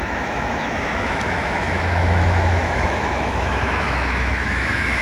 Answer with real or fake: fake